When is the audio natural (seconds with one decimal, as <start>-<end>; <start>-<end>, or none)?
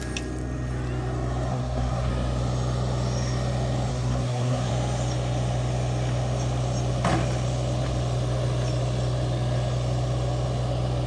0.0-1.5; 2.1-3.9; 4.7-11.1